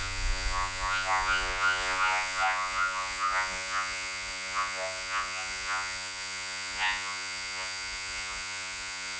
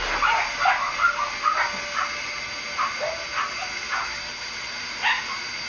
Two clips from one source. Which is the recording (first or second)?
second